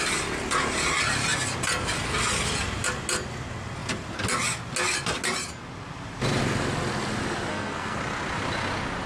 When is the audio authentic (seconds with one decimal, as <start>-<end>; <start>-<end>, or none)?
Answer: 0.0-7.5; 8.0-9.1